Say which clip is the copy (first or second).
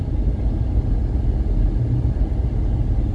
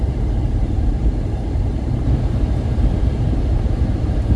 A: second